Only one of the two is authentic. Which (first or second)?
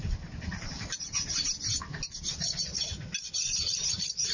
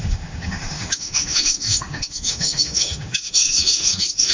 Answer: first